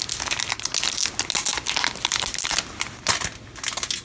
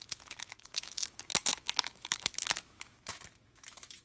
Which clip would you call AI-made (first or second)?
second